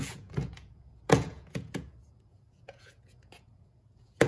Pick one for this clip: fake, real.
fake